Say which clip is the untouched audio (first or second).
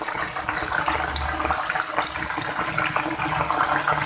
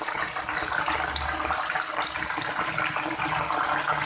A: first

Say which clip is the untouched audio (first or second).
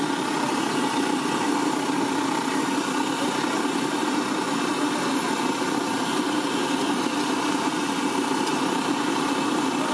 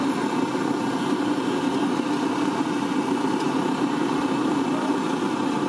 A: second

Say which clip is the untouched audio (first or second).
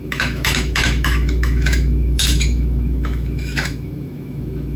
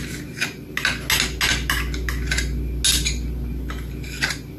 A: second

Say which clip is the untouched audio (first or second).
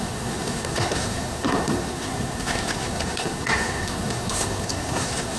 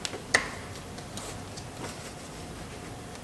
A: second